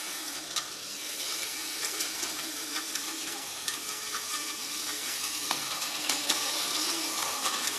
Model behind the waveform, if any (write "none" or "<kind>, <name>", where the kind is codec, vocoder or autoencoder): codec, SNAC